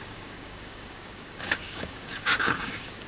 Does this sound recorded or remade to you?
remade